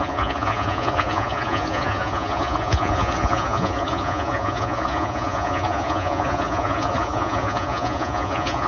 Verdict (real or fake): fake